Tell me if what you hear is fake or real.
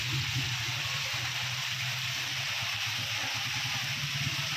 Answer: real